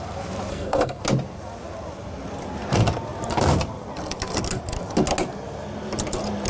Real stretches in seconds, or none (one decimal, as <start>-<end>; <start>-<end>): 0.0-0.5; 1.0-6.5